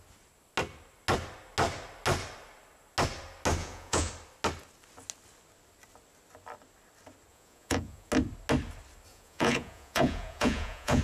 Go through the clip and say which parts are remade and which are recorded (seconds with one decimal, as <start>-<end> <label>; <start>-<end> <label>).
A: 0.0-3.6 recorded; 3.6-4.1 remade; 4.1-7.3 recorded; 7.3-8.1 remade; 8.1-9.1 recorded; 9.1-11.0 remade